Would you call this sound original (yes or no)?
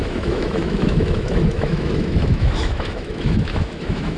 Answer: no